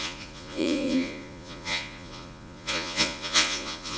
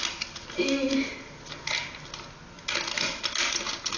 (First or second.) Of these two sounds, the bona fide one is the second